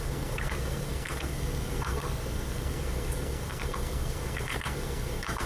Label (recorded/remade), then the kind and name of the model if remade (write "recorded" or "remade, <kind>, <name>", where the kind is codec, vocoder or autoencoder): remade, codec, SNAC